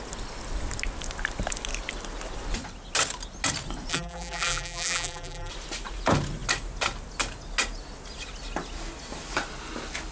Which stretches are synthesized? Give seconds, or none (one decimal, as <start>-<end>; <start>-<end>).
3.9-5.5